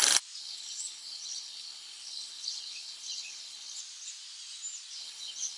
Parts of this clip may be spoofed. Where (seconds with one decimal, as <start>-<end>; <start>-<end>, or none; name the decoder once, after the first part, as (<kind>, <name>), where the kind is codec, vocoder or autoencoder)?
0.4-3.8 (codec, HILCodec); 5.0-5.6